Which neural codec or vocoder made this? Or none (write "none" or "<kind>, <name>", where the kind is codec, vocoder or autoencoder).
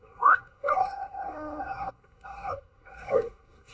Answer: codec, SNAC